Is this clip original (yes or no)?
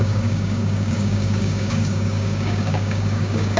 no